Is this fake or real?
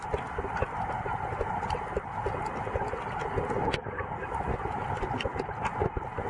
real